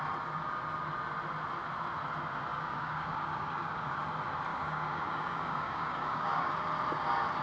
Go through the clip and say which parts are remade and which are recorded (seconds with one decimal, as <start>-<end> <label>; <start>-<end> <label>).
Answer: 0.0-2.5 recorded; 2.5-4.0 remade; 4.0-4.5 recorded; 4.5-6.5 remade; 6.5-7.4 recorded